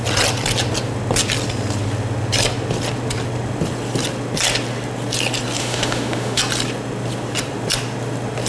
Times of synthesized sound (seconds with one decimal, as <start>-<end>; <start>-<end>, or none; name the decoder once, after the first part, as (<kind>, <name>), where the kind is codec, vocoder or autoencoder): 5.6-6.4 (autoencoder, DAC-VAE)